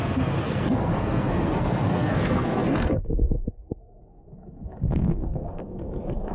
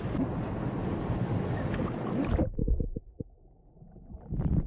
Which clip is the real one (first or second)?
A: second